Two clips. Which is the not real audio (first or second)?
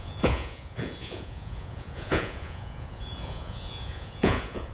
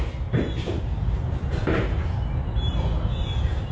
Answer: first